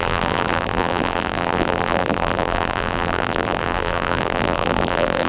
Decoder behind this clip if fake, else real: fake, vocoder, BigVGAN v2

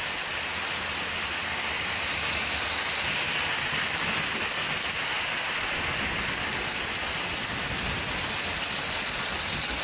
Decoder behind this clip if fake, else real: real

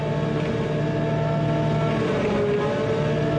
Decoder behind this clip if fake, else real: real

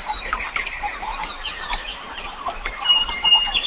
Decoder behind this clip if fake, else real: fake, vocoder, BigVGAN v2